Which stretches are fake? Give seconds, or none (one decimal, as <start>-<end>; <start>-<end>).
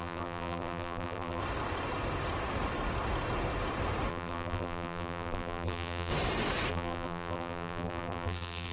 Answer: 0.0-1.4; 4.1-6.1; 6.7-8.7